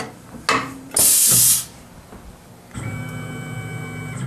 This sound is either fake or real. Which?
real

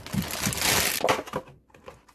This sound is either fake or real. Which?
real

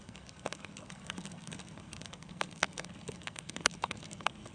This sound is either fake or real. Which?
fake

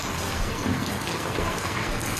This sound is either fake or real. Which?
fake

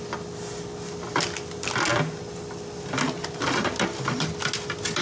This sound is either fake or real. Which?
real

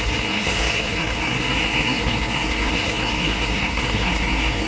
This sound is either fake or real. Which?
fake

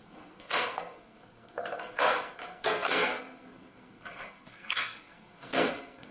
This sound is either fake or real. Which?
fake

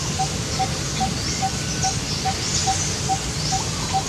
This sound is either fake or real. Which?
real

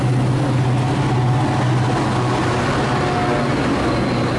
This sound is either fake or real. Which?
real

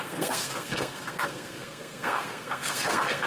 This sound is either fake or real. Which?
fake